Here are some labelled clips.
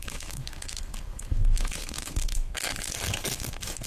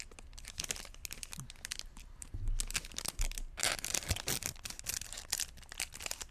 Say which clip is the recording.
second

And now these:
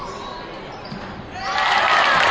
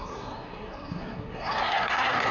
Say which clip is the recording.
first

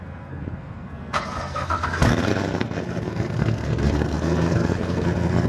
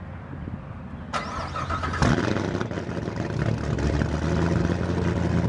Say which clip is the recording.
second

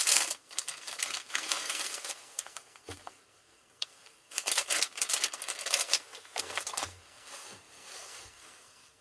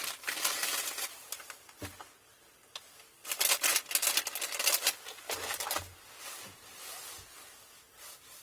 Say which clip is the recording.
second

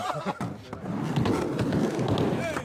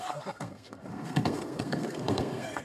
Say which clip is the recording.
first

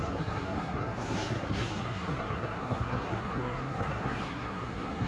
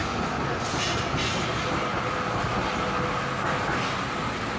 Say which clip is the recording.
second